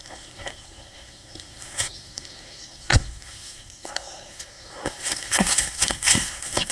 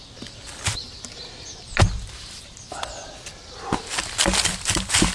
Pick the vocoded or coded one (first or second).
first